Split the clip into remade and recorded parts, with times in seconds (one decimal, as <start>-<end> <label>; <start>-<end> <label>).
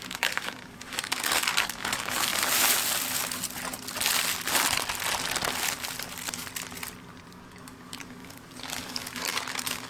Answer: 0.0-2.3 remade; 2.3-7.3 recorded; 7.3-9.9 remade